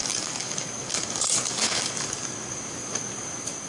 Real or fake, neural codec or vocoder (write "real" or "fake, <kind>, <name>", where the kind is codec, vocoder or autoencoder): fake, codec, DAC